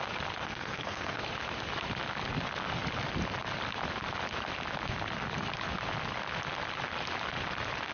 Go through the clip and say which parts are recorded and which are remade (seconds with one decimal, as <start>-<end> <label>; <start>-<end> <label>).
0.0-0.4 recorded; 0.4-1.2 remade; 1.2-7.9 recorded